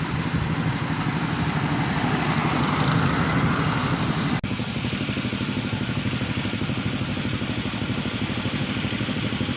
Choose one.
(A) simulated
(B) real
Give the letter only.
B